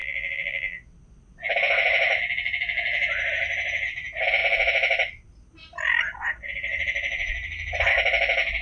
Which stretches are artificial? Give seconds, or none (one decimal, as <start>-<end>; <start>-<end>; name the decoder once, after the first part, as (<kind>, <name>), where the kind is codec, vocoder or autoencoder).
0.0-0.8 (vocoder, BigVGAN v2)